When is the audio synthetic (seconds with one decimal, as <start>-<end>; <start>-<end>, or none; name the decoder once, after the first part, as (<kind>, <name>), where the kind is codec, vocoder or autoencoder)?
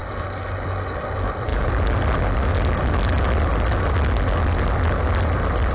none